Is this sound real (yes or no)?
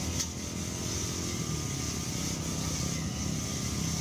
yes